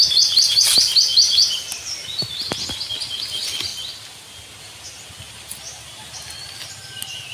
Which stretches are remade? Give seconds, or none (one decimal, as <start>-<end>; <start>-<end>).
none